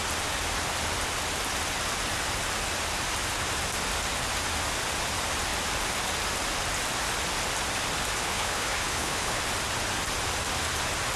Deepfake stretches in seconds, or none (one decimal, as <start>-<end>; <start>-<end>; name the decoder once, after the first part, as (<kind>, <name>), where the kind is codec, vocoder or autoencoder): 8.2-9.4 (codec, HILCodec)